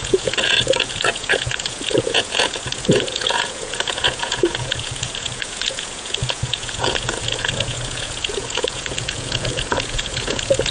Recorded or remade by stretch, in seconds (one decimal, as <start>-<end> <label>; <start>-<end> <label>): 0.0-10.7 remade